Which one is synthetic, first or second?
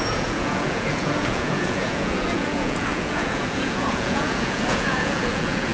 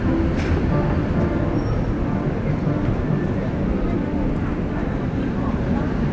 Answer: first